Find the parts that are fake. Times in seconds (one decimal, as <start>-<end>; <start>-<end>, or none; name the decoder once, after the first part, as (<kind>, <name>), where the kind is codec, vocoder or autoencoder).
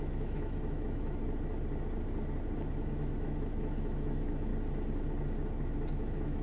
0.0-1.2 (autoencoder, DAC-VAE); 2.7-4.5; 5.9-6.4